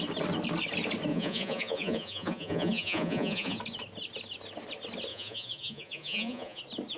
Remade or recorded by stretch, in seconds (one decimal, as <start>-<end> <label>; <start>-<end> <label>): 0.0-1.1 recorded; 1.1-3.6 remade; 3.6-5.1 recorded; 5.1-6.6 remade; 6.6-7.0 recorded